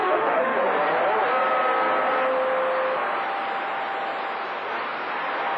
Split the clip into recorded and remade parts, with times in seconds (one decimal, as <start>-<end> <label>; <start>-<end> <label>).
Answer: 0.0-0.6 remade; 0.6-5.6 recorded